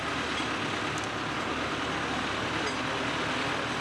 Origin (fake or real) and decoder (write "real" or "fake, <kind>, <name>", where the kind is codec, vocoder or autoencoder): real